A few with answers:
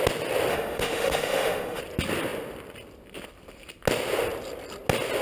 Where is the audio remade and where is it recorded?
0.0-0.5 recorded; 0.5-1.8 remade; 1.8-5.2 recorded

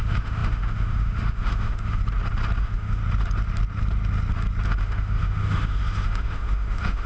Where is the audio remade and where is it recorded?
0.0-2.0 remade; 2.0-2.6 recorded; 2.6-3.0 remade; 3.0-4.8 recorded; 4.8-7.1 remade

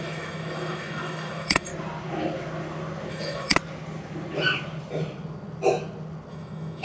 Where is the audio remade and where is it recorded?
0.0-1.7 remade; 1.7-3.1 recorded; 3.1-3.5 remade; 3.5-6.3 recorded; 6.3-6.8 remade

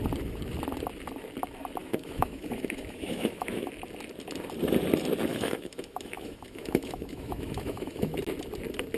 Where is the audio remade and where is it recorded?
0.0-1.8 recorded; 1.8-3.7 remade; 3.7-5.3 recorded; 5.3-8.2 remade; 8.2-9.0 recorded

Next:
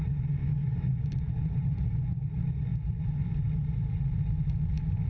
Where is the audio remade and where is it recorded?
0.0-0.4 recorded; 0.4-0.9 remade; 0.9-5.1 recorded

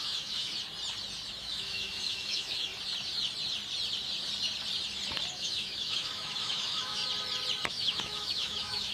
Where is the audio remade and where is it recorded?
0.0-0.5 remade; 0.5-1.4 recorded; 1.4-2.7 remade; 2.7-5.3 recorded; 5.3-7.0 remade; 7.0-7.7 recorded; 7.7-8.9 remade